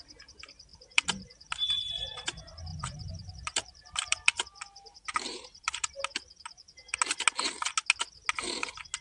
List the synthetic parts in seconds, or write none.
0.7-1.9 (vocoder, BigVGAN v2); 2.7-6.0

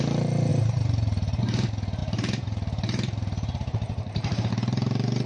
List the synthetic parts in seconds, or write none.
0.5-1.4 (vocoder, BigVGAN v2); 2.0-4.5

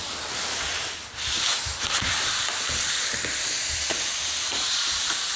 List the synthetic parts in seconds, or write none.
none

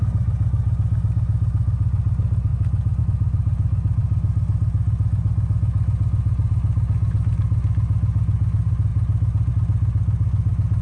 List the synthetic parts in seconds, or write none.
none